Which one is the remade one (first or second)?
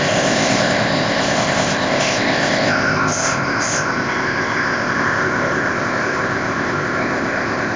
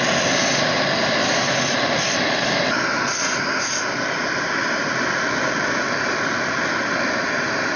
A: first